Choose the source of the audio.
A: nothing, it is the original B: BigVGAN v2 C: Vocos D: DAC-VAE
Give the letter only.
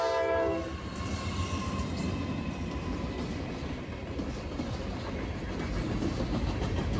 A